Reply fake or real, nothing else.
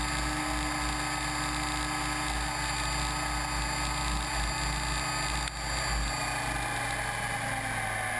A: real